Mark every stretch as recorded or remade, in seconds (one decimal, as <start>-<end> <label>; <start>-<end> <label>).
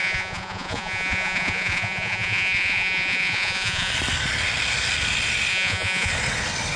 0.0-3.9 remade; 3.9-5.5 recorded; 5.5-6.1 remade; 6.1-6.8 recorded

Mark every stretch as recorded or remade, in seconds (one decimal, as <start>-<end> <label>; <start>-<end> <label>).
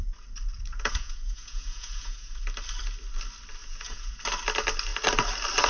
0.0-0.7 recorded; 0.7-2.4 remade; 2.4-3.6 recorded; 3.6-4.2 remade; 4.2-5.7 recorded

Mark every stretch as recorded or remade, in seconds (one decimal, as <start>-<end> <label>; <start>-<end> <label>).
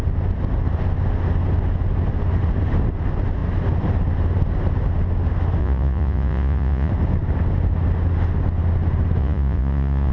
0.0-5.6 recorded; 5.6-6.9 remade; 6.9-9.2 recorded; 9.2-10.1 remade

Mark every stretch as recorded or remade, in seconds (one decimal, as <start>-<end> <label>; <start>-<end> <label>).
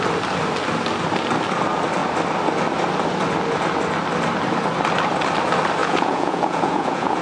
0.0-5.8 recorded; 5.8-7.2 remade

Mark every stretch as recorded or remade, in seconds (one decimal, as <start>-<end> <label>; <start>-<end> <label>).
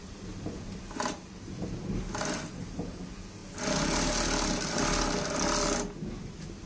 0.0-6.7 recorded